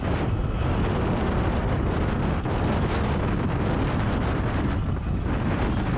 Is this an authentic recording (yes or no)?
yes